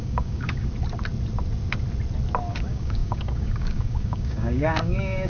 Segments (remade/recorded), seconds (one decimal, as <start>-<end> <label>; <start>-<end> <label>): 0.0-0.7 remade; 0.7-2.5 recorded; 2.5-5.3 remade